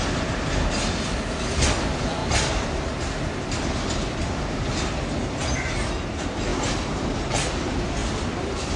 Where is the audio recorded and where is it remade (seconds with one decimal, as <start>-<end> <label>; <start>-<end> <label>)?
0.0-8.8 recorded